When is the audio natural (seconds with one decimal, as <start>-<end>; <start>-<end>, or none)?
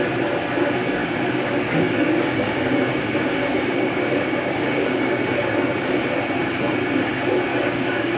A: 0.0-1.0; 5.2-7.5